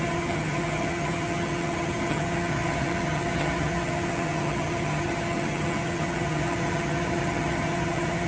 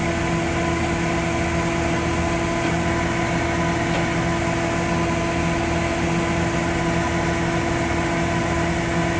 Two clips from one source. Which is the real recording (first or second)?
second